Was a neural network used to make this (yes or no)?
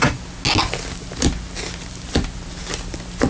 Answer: no